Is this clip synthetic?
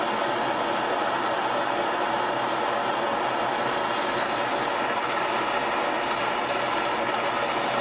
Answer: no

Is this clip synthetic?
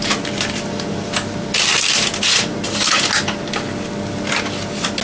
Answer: no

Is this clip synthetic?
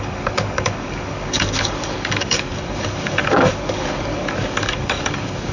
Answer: yes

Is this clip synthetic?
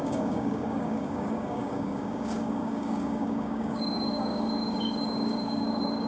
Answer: yes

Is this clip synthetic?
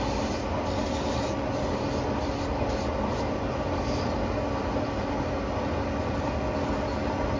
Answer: no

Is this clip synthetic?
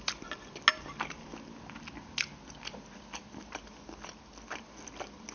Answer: no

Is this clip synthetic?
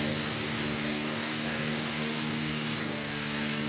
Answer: yes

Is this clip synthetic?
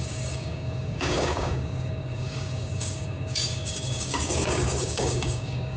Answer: yes